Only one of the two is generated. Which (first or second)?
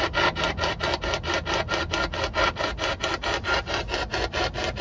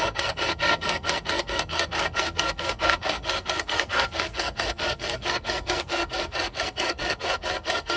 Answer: second